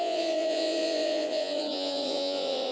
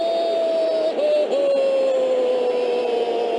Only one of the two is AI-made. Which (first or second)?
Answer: first